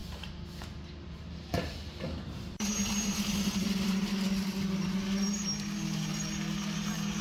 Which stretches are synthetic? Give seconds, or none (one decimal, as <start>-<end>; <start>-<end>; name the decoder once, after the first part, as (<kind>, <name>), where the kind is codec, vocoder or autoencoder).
0.0-4.1 (vocoder, BigVGAN v2)

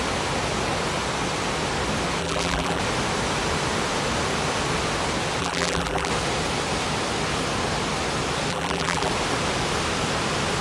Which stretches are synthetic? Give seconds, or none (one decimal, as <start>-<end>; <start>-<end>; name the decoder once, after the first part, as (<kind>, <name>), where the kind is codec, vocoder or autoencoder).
2.2-2.8 (vocoder, BigVGAN v2); 5.4-6.1; 8.5-9.1

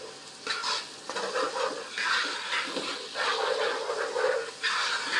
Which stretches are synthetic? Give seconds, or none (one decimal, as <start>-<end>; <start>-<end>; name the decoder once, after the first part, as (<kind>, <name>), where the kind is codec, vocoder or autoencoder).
none

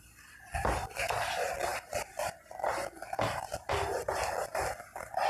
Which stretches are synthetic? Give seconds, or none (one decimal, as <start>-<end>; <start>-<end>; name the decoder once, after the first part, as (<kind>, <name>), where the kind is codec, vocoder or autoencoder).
1.7-2.4 (vocoder, BigVGAN v2)

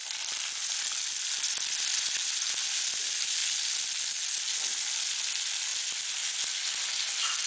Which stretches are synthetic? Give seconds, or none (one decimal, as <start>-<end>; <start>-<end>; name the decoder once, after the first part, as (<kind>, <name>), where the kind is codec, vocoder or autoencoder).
none